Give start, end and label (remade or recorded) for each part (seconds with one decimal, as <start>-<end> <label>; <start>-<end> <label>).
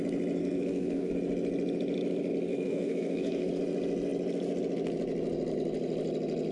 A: 0.0-0.4 recorded; 0.4-1.1 remade; 1.1-2.5 recorded; 2.5-3.5 remade; 3.5-6.5 recorded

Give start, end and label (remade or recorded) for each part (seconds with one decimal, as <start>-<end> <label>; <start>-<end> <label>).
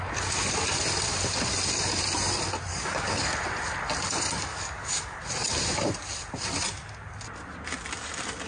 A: 0.0-2.7 recorded; 2.7-3.3 remade; 3.3-4.5 recorded; 4.5-5.2 remade; 5.2-8.5 recorded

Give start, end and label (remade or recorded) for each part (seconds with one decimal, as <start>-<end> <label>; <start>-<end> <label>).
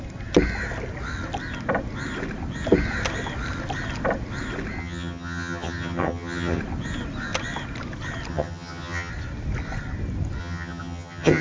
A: 0.0-4.8 recorded; 4.8-6.6 remade; 6.6-8.3 recorded; 8.3-9.1 remade; 9.1-10.4 recorded; 10.4-11.4 remade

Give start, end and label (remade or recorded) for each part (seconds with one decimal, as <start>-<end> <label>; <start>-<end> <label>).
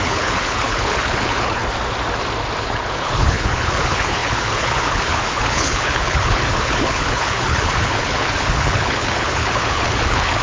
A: 0.0-1.6 remade; 1.6-2.6 recorded; 2.6-10.4 remade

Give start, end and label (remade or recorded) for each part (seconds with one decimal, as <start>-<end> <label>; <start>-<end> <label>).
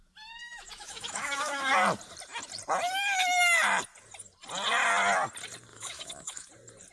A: 0.0-0.4 recorded; 0.4-1.7 remade; 1.7-5.7 recorded; 5.7-6.5 remade; 6.5-6.9 recorded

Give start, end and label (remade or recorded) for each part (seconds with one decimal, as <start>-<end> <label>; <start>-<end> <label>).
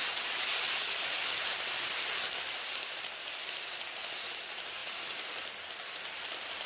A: 0.0-6.7 recorded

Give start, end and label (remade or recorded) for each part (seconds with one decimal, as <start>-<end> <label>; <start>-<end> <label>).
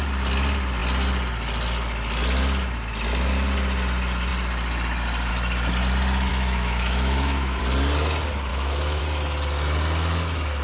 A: 0.0-6.3 recorded; 6.3-7.6 remade; 7.6-8.5 recorded; 8.5-9.0 remade; 9.0-10.6 recorded